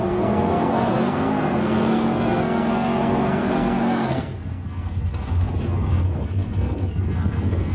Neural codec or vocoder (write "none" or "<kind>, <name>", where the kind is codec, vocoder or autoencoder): codec, SNAC